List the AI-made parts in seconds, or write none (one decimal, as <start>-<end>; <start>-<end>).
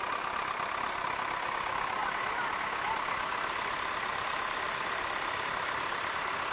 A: 4.1-5.5